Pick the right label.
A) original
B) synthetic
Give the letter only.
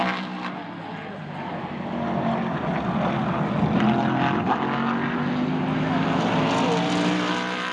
A